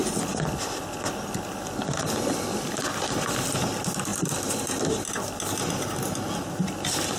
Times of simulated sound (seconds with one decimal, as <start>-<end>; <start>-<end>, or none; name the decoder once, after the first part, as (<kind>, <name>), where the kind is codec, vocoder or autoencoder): 2.8-7.2 (vocoder, BigVGAN v2)